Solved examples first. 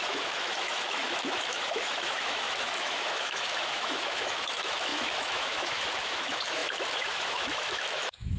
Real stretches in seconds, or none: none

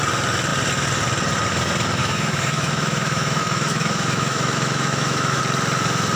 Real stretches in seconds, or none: 0.0-2.0; 5.4-6.2